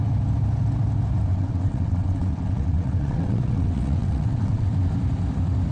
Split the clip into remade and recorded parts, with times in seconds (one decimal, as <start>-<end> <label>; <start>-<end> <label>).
0.0-1.3 recorded; 1.3-4.7 remade; 4.7-5.7 recorded